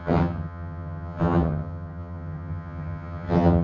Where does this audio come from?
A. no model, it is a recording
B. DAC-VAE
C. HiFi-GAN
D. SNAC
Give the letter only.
C